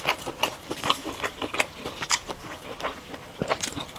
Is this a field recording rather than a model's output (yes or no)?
no